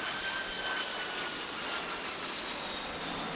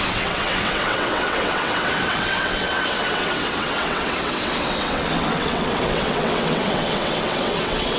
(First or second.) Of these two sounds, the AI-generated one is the second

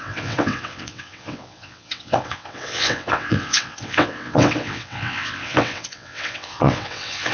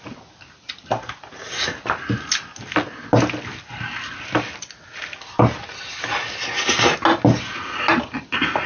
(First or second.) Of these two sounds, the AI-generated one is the first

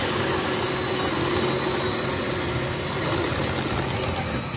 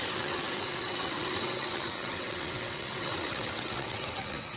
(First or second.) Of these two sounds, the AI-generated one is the second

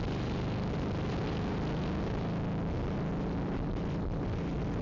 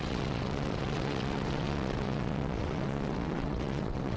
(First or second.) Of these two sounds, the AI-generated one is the second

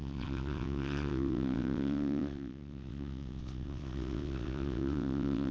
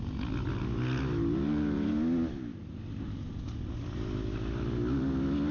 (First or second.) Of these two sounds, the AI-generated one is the first